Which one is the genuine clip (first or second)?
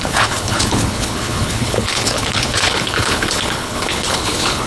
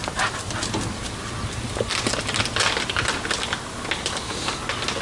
second